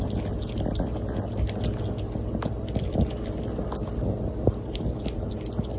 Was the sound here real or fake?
real